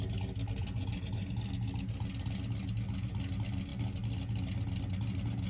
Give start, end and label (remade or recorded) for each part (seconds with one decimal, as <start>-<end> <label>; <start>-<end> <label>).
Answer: 0.0-0.6 recorded; 0.6-1.3 remade; 1.3-5.5 recorded